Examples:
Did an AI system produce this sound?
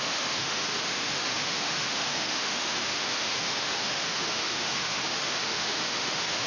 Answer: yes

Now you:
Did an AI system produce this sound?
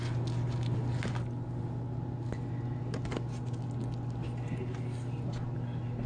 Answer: no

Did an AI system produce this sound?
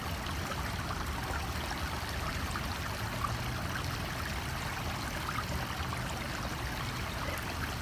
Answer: no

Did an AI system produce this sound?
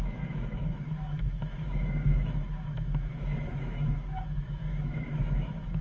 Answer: yes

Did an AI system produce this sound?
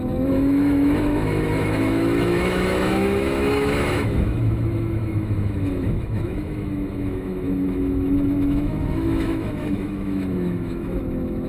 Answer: yes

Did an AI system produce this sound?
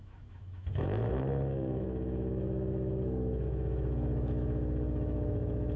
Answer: yes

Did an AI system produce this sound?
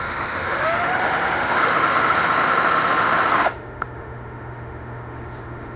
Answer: yes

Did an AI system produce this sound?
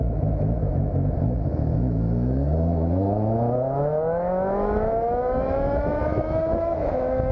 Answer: yes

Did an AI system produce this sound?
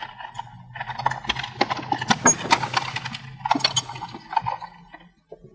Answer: no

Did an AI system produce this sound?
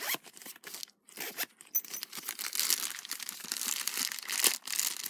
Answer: no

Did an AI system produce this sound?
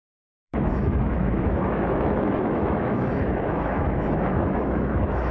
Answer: yes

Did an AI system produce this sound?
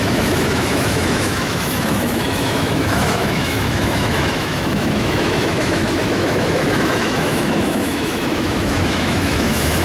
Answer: yes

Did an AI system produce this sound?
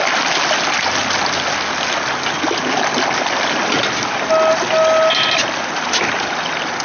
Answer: no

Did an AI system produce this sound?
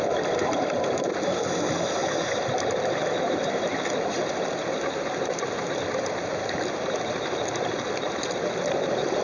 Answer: no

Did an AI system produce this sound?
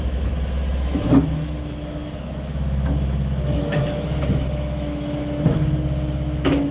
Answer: yes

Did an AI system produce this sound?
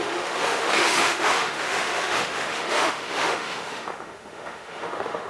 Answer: yes